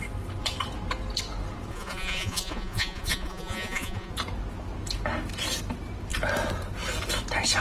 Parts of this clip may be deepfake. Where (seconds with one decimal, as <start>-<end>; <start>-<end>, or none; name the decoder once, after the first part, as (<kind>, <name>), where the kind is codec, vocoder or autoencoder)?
1.7-4.1 (vocoder, Vocos)